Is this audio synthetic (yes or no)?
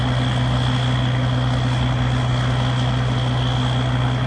no